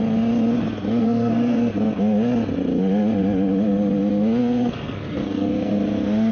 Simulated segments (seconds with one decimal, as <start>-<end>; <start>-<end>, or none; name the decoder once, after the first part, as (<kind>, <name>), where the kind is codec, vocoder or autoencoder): 1.0-1.7 (codec, SNAC); 4.4-5.7